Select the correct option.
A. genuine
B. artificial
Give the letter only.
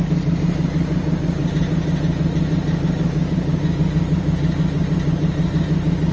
B